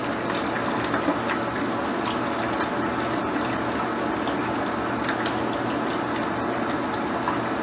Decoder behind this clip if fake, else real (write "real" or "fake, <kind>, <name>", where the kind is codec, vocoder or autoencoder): real